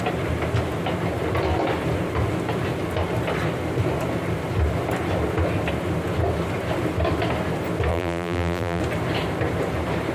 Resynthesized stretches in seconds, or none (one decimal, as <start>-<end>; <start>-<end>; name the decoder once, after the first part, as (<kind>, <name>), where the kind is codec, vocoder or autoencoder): 7.9-8.8 (vocoder, BigVGAN v2)